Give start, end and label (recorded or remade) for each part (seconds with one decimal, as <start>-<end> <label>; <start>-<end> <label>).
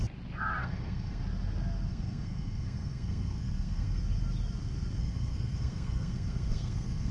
0.0-0.6 recorded; 0.6-1.2 remade; 1.2-1.9 recorded; 1.9-4.0 remade; 4.0-5.0 recorded; 5.0-7.1 remade